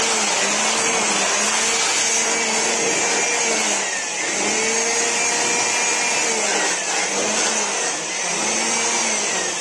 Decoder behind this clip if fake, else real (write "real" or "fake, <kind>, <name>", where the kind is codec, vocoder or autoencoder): real